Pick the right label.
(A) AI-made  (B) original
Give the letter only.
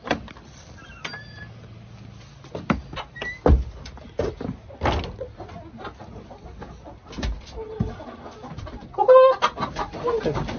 B